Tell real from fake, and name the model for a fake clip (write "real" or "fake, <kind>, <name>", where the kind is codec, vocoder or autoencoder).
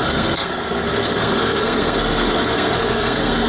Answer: fake, codec, SNAC